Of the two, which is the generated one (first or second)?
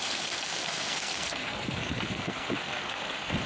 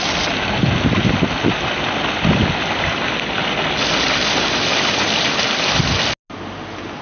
first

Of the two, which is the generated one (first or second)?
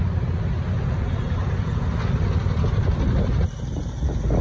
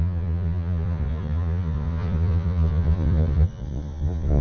second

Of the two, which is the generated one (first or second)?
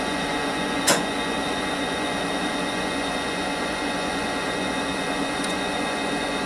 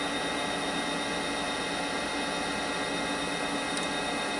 first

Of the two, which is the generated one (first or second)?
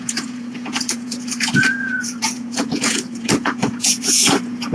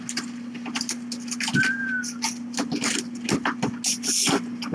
first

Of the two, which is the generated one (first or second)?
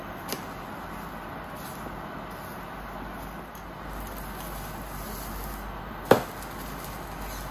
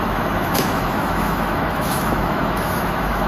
second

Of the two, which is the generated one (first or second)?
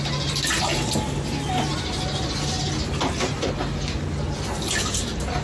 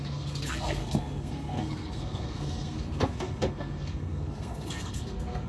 second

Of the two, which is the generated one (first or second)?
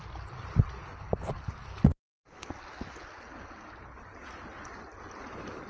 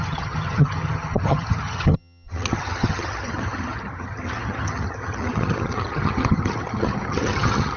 second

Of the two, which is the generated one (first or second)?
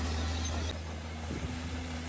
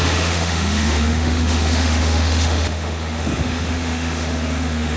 second